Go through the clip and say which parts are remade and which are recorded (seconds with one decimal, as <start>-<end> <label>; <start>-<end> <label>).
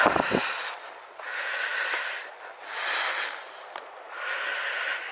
0.0-5.1 recorded